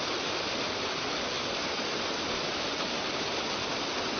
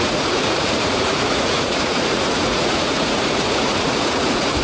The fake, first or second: second